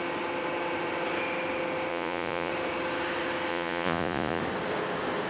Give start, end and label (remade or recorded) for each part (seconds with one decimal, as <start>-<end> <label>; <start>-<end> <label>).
0.0-1.9 recorded; 1.9-2.5 remade; 2.5-3.5 recorded; 3.5-4.4 remade; 4.4-5.3 recorded